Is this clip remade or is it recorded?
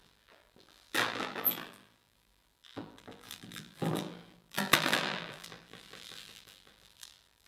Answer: remade